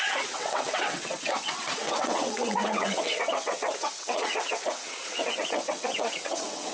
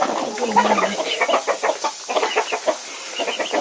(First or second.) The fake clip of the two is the first